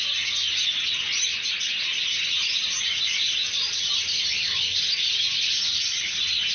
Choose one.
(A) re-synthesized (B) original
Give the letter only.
B